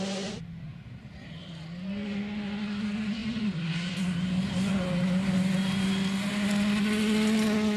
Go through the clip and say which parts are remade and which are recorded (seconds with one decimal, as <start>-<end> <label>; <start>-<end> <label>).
0.0-7.8 recorded